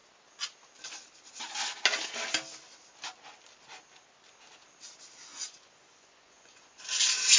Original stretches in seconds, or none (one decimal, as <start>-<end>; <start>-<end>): 0.0-5.3; 6.8-7.4